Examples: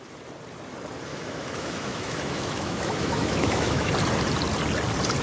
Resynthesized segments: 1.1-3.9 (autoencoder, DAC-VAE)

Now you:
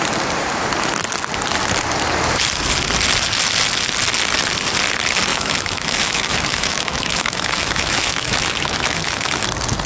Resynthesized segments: 5.3-9.3 (autoencoder, DAC-VAE)

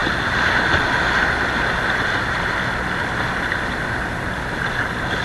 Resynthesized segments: none